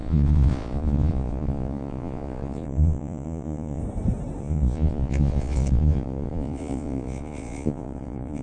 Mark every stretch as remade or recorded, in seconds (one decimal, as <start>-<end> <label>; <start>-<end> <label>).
0.0-3.8 remade; 3.8-4.4 recorded; 4.4-8.4 remade